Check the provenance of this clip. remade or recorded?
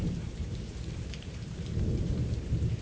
remade